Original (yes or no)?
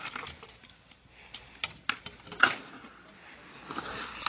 yes